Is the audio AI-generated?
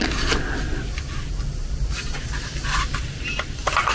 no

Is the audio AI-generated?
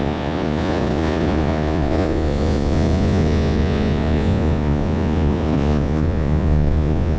yes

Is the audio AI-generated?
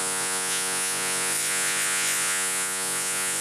yes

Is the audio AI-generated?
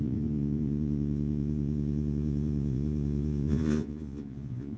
yes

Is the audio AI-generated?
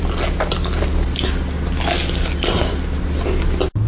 no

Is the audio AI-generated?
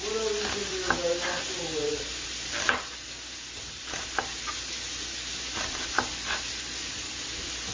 no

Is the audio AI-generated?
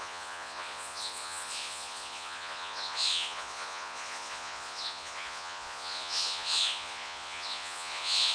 yes